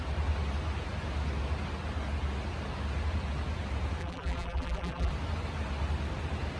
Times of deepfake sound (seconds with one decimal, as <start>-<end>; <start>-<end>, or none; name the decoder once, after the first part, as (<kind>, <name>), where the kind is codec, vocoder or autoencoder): 4.0-5.1 (vocoder, BigVGAN v2)